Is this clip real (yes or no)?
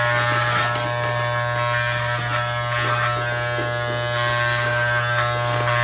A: yes